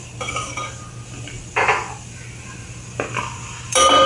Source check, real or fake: fake